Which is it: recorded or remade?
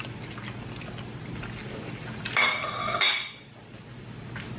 recorded